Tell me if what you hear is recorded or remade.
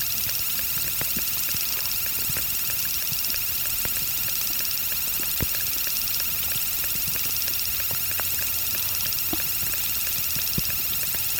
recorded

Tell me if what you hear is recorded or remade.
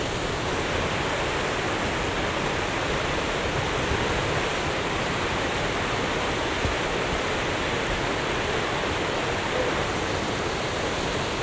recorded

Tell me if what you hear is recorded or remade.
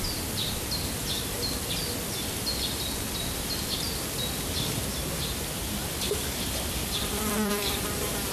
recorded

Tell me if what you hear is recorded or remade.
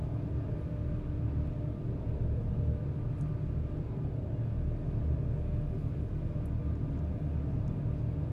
recorded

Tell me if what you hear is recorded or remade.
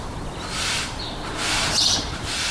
remade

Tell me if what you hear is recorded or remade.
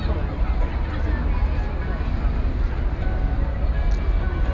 recorded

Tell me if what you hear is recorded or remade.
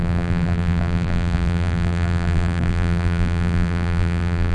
remade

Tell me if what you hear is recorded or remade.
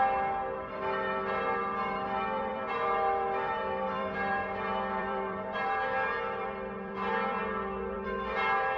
remade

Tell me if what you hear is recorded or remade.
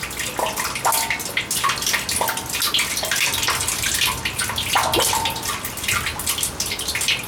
recorded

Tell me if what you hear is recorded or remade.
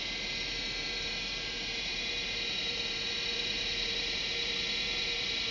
remade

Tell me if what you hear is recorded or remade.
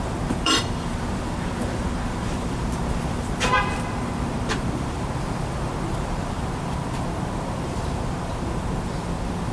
remade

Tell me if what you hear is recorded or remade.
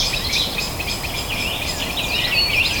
recorded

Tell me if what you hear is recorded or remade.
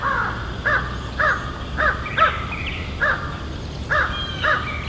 recorded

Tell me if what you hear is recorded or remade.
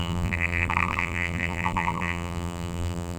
remade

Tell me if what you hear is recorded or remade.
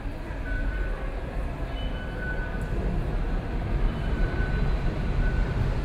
recorded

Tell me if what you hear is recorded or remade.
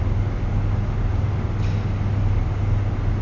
recorded